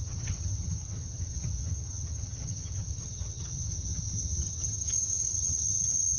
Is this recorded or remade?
remade